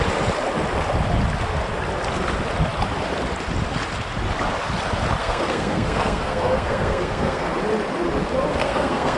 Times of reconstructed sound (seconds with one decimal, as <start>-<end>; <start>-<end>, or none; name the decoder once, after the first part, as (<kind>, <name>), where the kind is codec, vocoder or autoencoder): 5.2-7.5 (codec, SNAC); 8.5-9.2